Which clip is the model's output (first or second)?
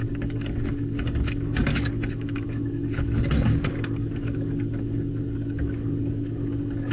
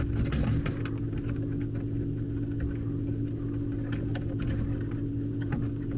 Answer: first